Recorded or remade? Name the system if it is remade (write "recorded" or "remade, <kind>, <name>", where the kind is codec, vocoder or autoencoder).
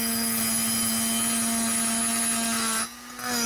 recorded